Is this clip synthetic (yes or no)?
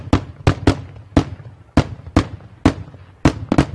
no